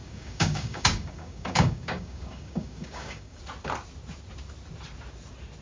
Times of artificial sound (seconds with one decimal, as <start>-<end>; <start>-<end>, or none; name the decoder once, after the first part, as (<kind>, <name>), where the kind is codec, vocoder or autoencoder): 0.0-3.4 (codec, DAC)